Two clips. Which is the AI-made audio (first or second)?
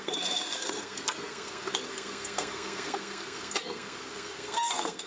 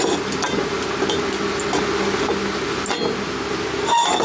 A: first